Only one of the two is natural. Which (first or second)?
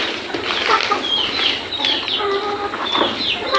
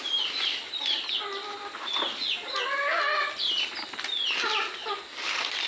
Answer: second